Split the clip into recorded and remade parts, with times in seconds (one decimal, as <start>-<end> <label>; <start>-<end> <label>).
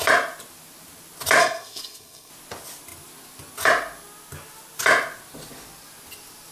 0.0-1.4 recorded; 1.4-2.3 remade; 2.3-6.5 recorded